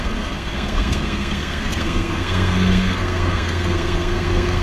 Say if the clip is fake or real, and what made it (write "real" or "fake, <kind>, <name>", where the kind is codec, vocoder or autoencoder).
fake, codec, SNAC